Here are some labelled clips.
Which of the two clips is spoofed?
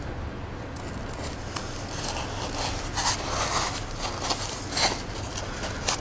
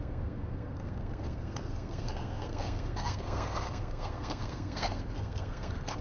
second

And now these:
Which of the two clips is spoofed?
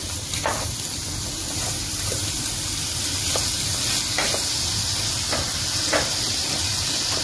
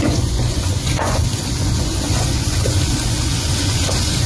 second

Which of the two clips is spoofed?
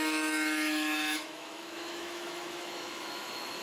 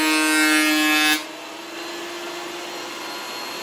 first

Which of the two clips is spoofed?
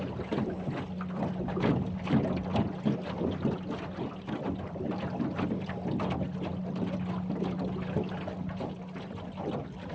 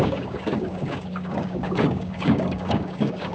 second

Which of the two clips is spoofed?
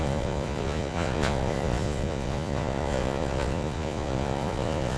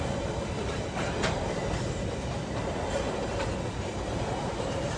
first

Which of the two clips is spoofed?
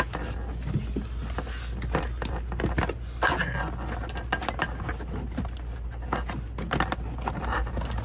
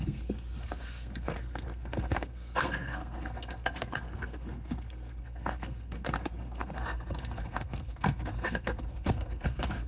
second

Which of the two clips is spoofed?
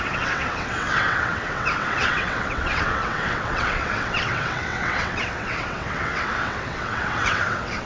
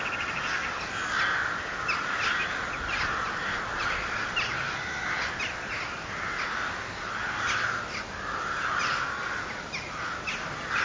first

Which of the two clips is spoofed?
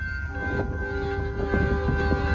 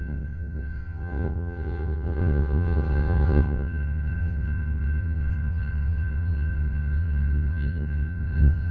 second